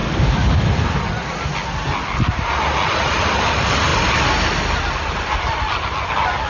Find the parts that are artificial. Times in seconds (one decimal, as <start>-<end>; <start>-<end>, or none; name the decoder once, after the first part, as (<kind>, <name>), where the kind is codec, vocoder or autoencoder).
0.0-0.6 (codec, DAC)